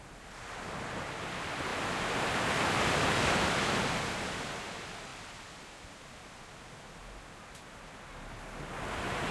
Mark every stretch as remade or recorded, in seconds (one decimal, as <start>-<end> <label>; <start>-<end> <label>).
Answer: 0.0-9.3 recorded